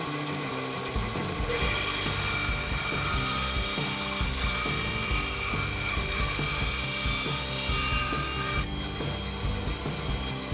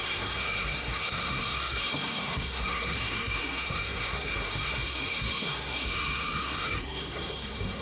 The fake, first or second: second